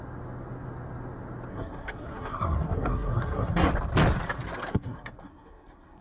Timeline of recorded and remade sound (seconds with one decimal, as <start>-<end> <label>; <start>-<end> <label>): 0.0-1.5 recorded; 1.5-3.7 remade; 3.7-4.7 recorded; 4.7-6.0 remade